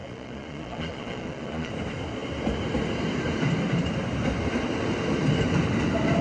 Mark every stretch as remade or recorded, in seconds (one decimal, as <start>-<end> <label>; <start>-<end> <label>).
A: 0.0-1.7 remade; 1.7-6.2 recorded

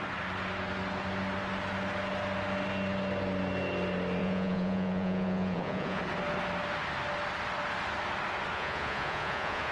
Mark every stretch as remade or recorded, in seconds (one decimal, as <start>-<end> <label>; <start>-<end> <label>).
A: 0.0-4.2 recorded; 4.2-6.0 remade; 6.0-8.5 recorded; 8.5-9.7 remade

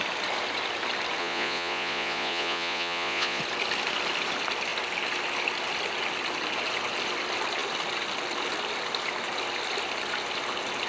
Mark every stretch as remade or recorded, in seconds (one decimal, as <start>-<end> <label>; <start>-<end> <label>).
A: 0.0-1.2 recorded; 1.2-3.4 remade; 3.4-10.9 recorded

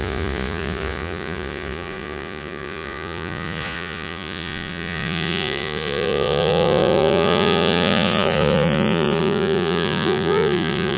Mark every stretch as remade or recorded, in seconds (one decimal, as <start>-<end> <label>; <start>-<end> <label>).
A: 0.0-11.0 remade

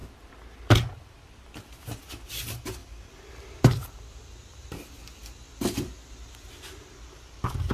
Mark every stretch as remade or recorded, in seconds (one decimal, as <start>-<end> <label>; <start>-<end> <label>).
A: 0.0-7.7 recorded

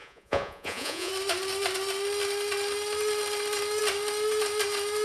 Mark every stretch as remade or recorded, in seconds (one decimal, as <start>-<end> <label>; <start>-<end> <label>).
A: 0.0-1.1 remade; 1.1-5.0 recorded

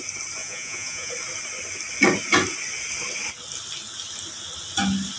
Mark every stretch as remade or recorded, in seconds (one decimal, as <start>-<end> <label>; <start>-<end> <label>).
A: 0.0-0.4 recorded; 0.4-1.1 remade; 1.1-5.2 recorded

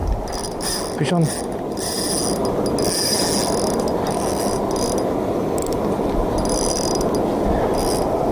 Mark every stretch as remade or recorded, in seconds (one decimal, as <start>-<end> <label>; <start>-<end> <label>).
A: 0.0-8.3 recorded